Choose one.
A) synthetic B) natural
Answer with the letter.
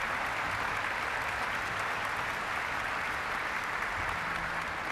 B